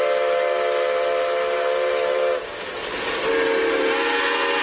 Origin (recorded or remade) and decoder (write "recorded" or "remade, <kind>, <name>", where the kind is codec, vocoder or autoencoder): recorded